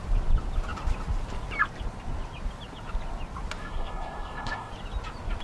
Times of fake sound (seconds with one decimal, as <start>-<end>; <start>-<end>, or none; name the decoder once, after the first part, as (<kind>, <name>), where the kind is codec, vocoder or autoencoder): 3.6-4.7 (codec, SNAC)